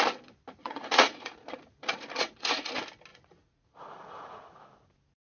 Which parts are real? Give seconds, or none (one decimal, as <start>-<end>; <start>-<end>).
0.0-0.6; 2.7-3.1; 4.6-5.3